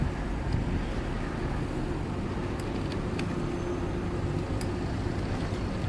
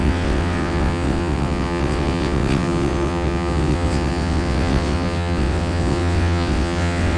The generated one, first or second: second